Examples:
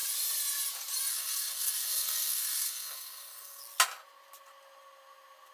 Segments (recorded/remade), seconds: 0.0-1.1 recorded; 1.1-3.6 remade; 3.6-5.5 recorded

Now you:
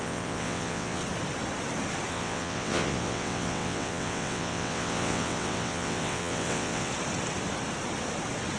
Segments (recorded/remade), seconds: 0.0-1.0 remade; 1.0-2.1 recorded; 2.1-6.9 remade; 6.9-8.6 recorded

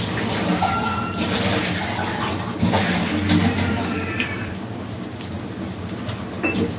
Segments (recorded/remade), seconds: 0.0-1.8 recorded; 1.8-2.3 remade; 2.3-3.4 recorded; 3.4-5.1 remade; 5.1-6.8 recorded

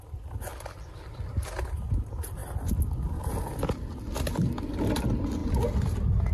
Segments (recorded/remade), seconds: 0.0-6.3 recorded

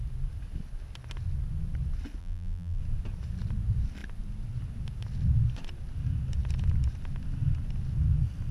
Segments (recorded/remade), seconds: 0.0-2.2 recorded; 2.2-2.8 remade; 2.8-8.5 recorded